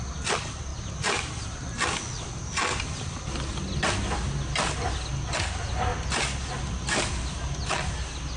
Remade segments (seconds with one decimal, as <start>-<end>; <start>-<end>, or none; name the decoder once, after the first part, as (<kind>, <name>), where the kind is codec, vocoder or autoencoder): none